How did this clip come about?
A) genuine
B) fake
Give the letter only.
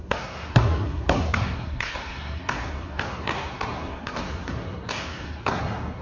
B